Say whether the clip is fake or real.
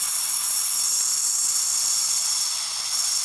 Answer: real